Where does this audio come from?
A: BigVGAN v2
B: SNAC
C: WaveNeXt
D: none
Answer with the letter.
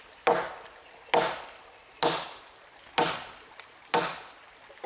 D